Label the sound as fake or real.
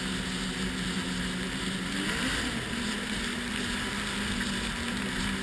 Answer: real